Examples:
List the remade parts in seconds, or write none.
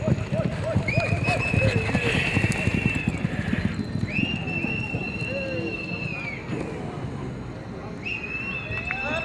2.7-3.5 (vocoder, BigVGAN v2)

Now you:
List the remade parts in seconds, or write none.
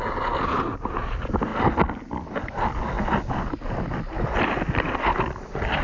none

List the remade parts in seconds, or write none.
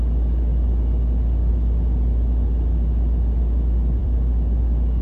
4.0-4.6 (vocoder, BigVGAN v2)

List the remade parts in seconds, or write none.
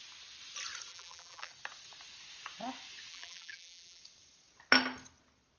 0.9-1.5 (vocoder, BigVGAN v2); 3.1-4.0